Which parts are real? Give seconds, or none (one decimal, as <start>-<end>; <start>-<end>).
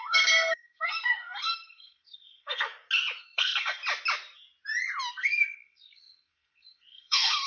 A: 2.7-3.2; 3.8-5.1